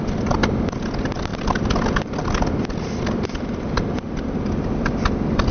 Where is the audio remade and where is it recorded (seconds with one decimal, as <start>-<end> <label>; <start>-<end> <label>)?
0.0-5.5 recorded